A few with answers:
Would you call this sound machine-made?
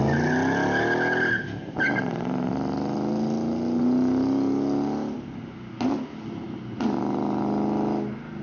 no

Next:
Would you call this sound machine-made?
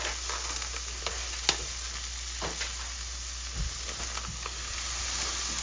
no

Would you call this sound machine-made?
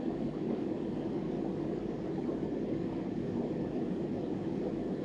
yes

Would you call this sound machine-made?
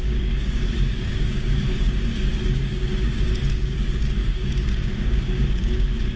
yes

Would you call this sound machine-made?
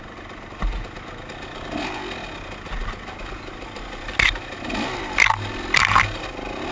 no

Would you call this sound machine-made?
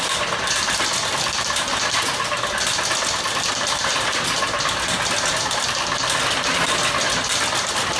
no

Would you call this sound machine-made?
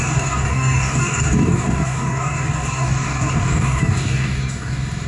yes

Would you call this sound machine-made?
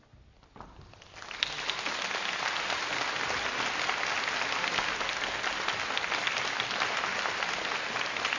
no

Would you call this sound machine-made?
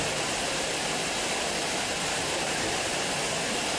no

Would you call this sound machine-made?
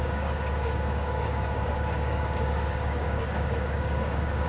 yes